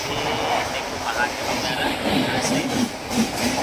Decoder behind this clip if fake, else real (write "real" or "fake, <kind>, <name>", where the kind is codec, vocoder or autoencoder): real